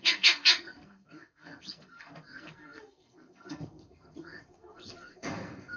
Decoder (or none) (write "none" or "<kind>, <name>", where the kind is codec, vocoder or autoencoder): codec, SNAC